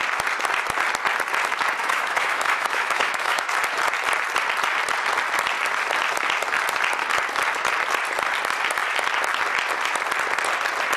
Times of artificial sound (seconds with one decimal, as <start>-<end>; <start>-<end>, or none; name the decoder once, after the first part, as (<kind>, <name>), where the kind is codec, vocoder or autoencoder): 1.8-3.5 (autoencoder, DAC-VAE)